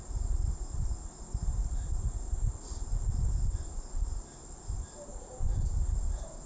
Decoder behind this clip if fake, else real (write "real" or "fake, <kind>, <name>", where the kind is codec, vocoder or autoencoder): real